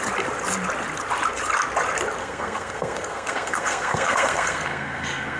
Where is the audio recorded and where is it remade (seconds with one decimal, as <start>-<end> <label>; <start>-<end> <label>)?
0.0-2.2 recorded; 2.2-5.4 remade